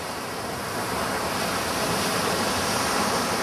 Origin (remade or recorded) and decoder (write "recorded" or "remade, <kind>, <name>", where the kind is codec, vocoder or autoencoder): remade, vocoder, BigVGAN v2